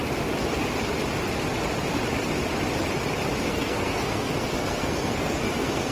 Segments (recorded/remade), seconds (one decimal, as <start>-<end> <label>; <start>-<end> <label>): 0.0-3.5 recorded; 3.5-5.9 remade